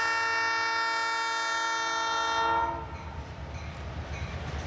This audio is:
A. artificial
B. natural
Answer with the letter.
B